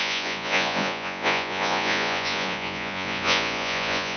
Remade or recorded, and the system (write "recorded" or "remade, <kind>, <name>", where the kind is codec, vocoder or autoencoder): remade, vocoder, Vocos